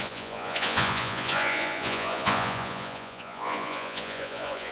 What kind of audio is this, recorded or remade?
remade